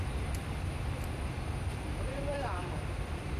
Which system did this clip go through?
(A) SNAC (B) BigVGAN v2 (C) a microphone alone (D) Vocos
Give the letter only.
B